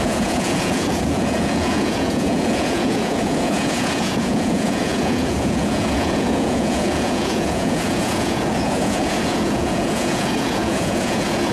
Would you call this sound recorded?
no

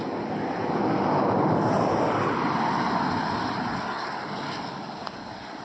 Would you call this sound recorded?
yes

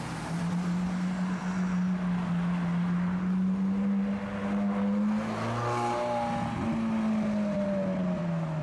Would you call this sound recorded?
yes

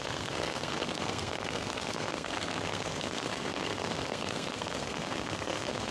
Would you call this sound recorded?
no